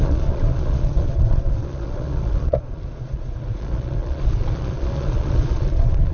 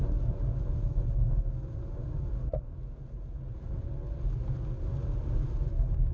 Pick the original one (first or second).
second